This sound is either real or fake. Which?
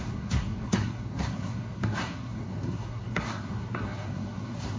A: fake